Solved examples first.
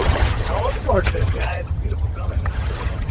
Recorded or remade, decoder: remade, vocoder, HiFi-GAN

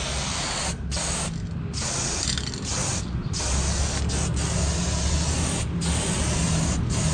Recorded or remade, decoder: recorded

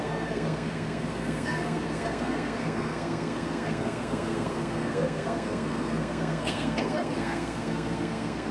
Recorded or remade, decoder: remade, codec, SNAC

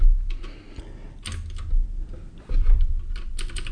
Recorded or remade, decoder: recorded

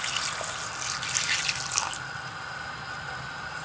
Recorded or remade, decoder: recorded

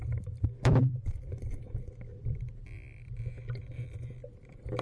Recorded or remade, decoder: remade, vocoder, BigVGAN v2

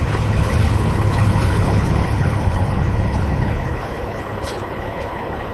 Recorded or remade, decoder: remade, codec, HILCodec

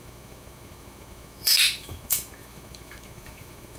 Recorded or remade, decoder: remade, autoencoder, DAC-VAE